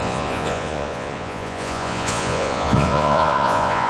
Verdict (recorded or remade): remade